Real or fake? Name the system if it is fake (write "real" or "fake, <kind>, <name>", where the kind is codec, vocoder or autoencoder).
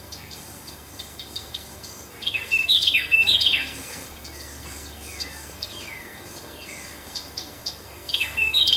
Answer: fake, codec, SNAC